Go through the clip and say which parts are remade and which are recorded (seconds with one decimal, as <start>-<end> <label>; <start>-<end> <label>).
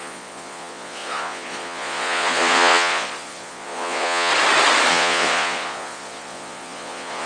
0.0-4.3 remade; 4.3-4.9 recorded; 4.9-7.3 remade